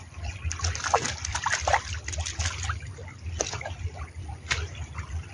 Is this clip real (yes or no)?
yes